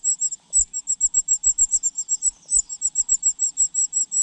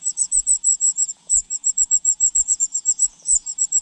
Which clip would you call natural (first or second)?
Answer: first